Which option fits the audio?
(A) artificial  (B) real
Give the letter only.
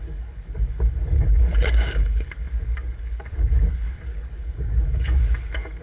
A